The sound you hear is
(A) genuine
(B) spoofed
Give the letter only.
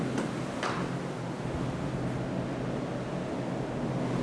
A